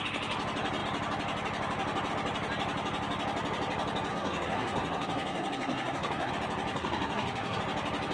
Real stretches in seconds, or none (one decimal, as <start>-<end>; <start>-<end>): 0.0-4.1; 6.3-6.7; 7.6-8.1